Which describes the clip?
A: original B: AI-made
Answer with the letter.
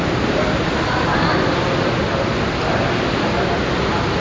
A